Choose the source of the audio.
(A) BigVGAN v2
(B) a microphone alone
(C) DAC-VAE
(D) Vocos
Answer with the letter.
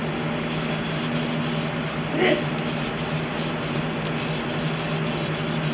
B